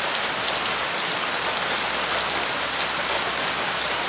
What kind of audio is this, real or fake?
real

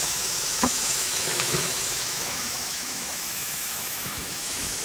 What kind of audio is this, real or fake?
fake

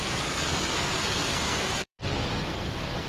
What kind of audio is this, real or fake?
fake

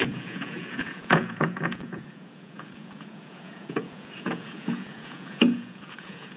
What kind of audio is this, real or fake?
fake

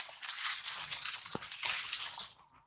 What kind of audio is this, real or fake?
real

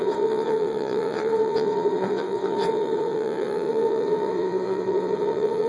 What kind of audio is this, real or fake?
fake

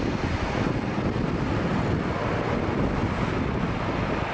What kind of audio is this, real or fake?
real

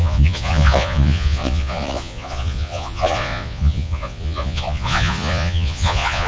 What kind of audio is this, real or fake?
fake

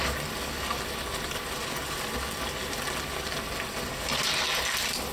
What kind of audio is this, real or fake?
real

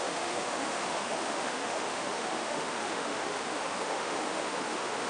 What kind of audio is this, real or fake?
fake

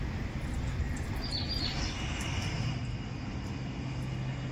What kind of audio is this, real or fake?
real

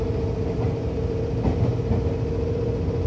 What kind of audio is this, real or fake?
real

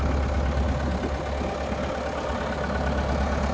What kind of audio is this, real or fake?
real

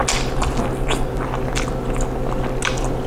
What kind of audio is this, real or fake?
real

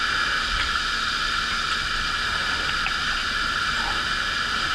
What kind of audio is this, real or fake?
real